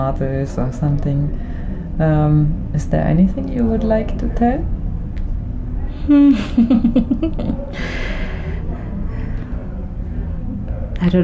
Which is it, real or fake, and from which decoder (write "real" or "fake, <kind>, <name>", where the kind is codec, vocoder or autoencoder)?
real